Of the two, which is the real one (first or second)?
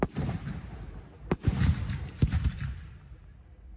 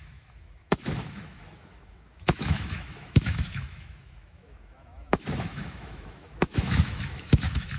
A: first